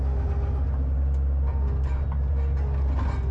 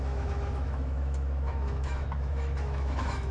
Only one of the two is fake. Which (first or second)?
second